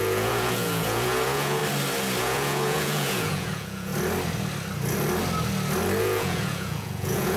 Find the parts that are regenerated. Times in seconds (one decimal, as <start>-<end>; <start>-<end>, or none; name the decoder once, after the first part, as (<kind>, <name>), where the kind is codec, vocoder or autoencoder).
0.0-1.6 (vocoder, Vocos); 2.2-3.9; 6.0-7.4